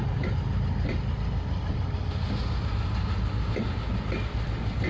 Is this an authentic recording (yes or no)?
yes